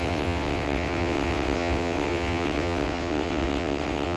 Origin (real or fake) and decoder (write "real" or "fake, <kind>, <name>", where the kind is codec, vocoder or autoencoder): fake, vocoder, WaveNeXt